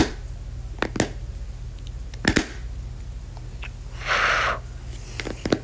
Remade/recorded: recorded